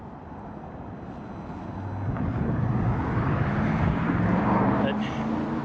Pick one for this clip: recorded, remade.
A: recorded